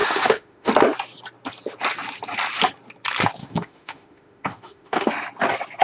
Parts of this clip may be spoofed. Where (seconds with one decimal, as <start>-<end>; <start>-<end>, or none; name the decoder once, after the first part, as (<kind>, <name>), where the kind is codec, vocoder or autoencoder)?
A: 0.0-0.7 (autoencoder, DAC-VAE); 3.4-5.1